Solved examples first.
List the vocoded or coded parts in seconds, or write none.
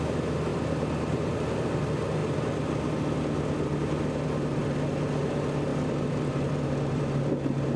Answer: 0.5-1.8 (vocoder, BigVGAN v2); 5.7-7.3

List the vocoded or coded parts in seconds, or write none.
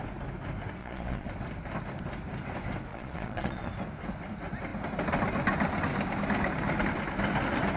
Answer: 0.8-1.3 (vocoder, Vocos); 2.9-3.7